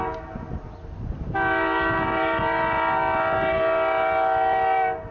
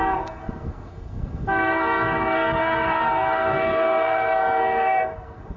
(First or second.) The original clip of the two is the first